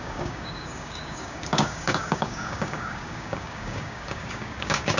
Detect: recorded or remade remade